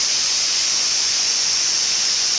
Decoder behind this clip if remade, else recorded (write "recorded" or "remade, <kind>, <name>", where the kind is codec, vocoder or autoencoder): remade, vocoder, Vocos